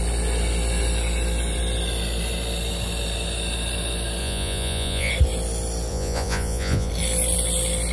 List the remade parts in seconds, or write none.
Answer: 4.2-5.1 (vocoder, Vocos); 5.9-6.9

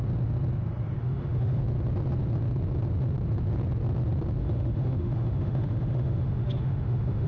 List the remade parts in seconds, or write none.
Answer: 1.0-1.6 (autoencoder, DAC-VAE); 4.4-7.3

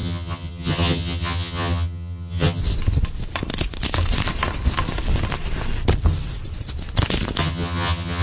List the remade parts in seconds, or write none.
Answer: 0.0-2.6 (vocoder, HiFi-GAN); 7.4-8.2